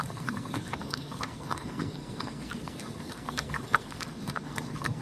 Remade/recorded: remade